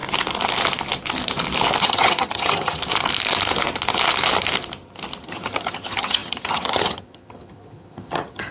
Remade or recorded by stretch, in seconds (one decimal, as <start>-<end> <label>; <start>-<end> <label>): 0.0-1.8 recorded; 1.8-2.8 remade; 2.8-5.2 recorded; 5.2-8.5 remade